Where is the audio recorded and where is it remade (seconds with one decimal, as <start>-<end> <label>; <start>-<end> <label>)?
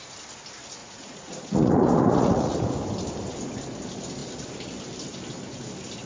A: 0.0-0.8 recorded; 0.8-2.7 remade; 2.7-6.1 recorded